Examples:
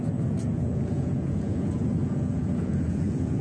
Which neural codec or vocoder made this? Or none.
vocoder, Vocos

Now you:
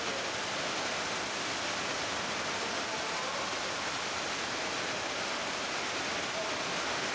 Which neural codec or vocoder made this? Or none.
none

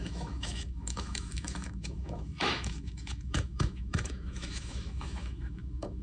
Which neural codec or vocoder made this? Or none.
autoencoder, DAC-VAE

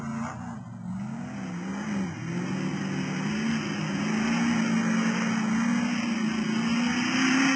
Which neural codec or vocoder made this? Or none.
none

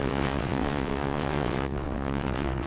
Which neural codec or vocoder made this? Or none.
vocoder, WaveNeXt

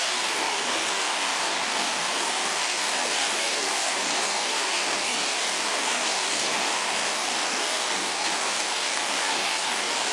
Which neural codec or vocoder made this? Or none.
codec, DAC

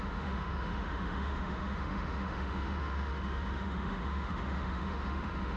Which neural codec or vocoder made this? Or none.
autoencoder, DAC-VAE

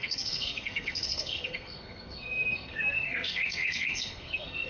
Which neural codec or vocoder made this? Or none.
codec, SNAC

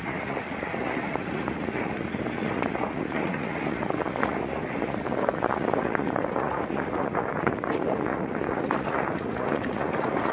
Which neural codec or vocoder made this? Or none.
vocoder, Vocos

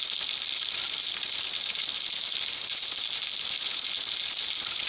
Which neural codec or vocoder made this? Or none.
none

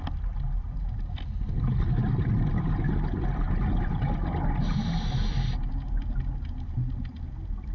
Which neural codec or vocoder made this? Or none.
none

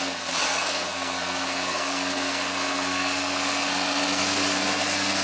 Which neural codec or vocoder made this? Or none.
codec, SNAC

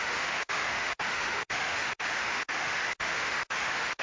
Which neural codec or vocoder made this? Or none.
autoencoder, DAC-VAE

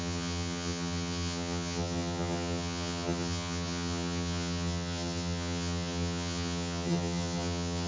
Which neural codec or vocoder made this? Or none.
vocoder, HiFi-GAN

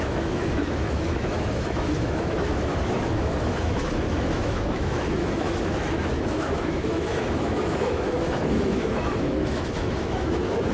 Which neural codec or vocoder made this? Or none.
autoencoder, DAC-VAE